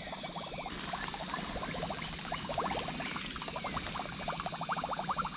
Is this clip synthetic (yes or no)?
no